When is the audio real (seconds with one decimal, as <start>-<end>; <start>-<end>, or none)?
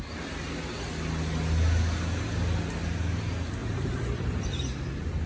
0.0-3.6; 4.8-5.3